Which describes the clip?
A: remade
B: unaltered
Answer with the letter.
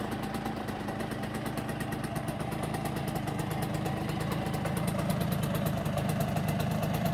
A